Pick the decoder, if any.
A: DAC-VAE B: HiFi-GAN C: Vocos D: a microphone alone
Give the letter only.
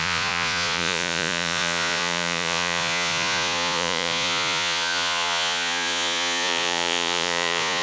C